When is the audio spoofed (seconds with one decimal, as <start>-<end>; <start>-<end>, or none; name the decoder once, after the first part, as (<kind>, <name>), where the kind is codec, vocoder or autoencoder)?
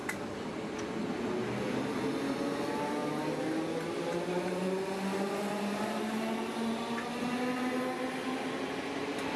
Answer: none